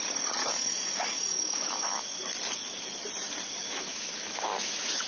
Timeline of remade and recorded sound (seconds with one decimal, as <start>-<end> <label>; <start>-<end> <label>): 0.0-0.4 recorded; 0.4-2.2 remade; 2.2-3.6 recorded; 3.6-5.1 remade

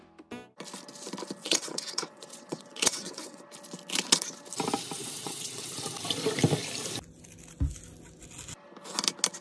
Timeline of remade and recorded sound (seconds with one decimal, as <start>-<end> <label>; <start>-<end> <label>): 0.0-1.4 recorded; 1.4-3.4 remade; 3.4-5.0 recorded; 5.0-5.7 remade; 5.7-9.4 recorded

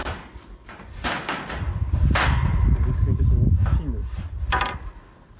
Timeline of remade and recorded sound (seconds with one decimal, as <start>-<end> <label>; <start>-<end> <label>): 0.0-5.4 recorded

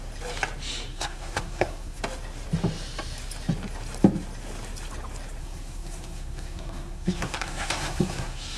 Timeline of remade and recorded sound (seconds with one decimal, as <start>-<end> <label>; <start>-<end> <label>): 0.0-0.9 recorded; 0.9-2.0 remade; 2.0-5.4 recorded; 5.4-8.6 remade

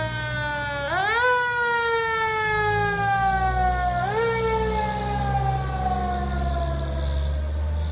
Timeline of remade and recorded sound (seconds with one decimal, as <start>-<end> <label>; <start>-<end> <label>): 0.0-7.9 recorded

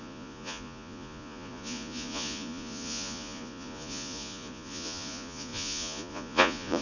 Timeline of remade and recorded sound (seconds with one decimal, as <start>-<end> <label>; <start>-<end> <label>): 0.0-6.8 remade

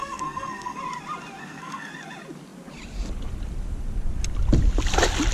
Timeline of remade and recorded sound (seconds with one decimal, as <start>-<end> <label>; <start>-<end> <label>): 0.0-0.8 remade; 0.8-1.4 recorded; 1.4-1.9 remade; 1.9-5.3 recorded

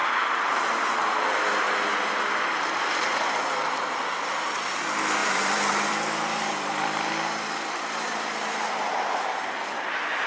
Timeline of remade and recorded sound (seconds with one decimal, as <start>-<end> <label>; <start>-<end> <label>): 0.0-0.5 remade; 0.5-5.2 recorded; 5.2-9.5 remade; 9.5-10.3 recorded